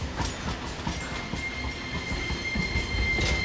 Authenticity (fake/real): real